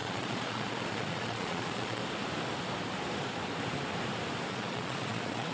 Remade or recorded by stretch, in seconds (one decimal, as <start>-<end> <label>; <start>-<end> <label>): 0.0-2.0 remade; 2.0-4.5 recorded; 4.5-5.5 remade